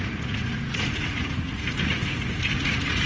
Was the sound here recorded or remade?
remade